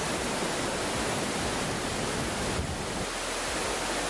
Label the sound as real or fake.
real